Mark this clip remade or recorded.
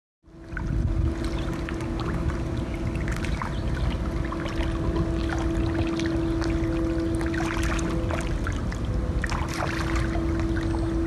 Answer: recorded